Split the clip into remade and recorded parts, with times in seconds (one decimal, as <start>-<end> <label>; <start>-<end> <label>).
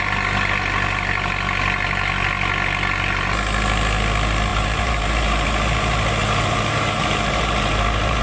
0.0-4.5 recorded; 4.5-8.2 remade